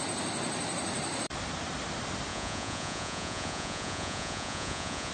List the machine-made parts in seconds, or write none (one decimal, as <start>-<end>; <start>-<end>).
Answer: 2.3-5.1